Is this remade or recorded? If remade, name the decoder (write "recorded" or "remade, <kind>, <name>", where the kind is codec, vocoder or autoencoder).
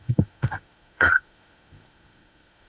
remade, codec, SNAC